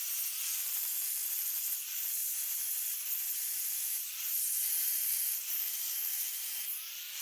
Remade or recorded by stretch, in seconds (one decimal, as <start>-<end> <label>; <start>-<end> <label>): 0.0-7.2 recorded